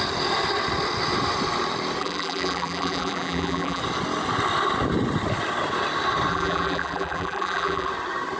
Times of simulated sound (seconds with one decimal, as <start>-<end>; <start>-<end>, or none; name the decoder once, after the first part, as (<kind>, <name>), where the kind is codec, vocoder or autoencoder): 2.0-3.8 (vocoder, BigVGAN v2); 6.3-7.9